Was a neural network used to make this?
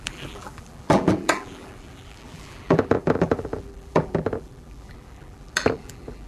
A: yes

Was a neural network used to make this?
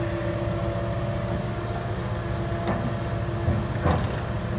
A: no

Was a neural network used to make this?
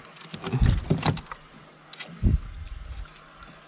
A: no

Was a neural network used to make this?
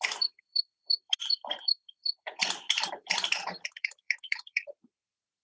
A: yes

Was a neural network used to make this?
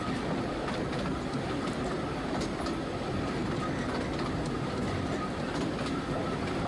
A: no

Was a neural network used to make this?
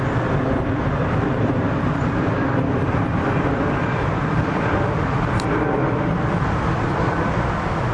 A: yes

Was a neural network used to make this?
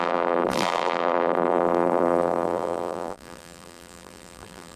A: yes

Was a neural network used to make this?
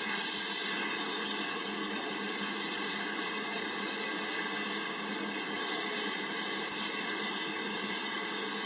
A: no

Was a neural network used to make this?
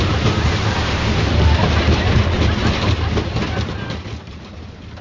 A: no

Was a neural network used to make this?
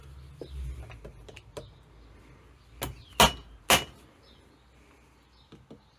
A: no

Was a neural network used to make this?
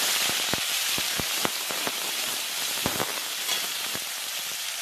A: yes